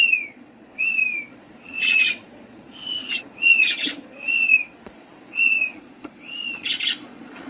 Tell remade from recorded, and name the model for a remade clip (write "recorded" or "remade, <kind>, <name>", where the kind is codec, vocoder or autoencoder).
remade, vocoder, Vocos